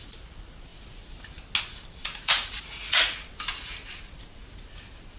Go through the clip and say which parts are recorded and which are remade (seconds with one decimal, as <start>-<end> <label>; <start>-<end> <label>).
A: 0.0-2.0 recorded; 2.0-3.3 remade; 3.3-5.2 recorded